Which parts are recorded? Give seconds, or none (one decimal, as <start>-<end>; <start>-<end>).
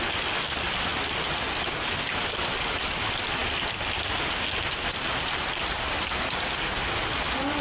0.0-7.6